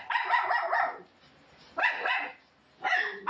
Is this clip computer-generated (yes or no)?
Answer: no